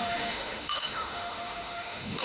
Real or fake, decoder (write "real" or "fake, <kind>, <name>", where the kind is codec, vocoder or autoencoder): fake, autoencoder, DAC-VAE